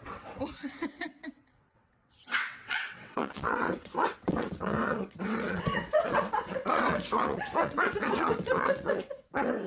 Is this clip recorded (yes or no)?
no